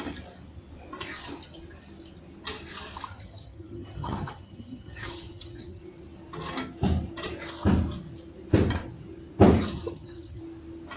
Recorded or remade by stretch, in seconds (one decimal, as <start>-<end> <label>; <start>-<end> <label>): 0.0-3.1 recorded; 3.1-5.8 remade; 5.8-9.7 recorded; 9.7-10.4 remade; 10.4-11.0 recorded